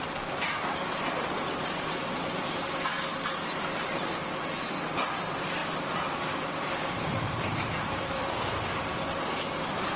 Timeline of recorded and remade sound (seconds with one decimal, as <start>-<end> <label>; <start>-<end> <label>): 0.0-10.0 remade